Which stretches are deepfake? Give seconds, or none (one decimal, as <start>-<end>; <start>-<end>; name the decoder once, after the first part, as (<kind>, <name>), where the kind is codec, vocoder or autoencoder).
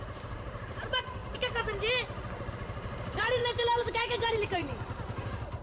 0.0-1.2 (vocoder, BigVGAN v2); 2.5-5.6